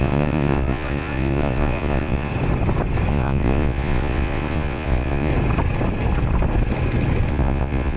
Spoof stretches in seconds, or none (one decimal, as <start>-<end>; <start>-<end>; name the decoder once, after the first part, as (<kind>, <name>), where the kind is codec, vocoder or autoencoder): 0.0-2.3 (vocoder, Vocos); 3.1-5.3; 7.3-8.0